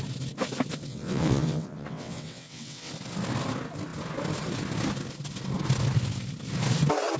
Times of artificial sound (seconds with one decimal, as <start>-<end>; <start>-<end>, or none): 0.9-2.9